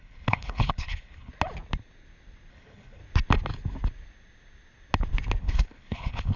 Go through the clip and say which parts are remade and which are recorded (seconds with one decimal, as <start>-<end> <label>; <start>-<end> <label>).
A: 0.0-1.3 remade; 1.3-2.5 recorded; 2.5-3.0 remade; 3.0-5.4 recorded; 5.4-6.4 remade